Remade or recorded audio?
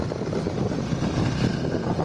recorded